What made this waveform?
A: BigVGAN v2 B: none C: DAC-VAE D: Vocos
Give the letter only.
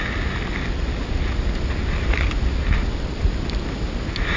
B